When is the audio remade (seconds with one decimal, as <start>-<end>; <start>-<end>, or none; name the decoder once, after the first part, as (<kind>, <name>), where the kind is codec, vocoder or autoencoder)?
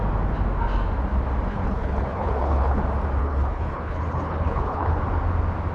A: 1.5-2.8 (codec, HILCodec); 3.2-5.0